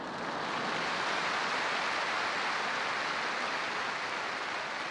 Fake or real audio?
real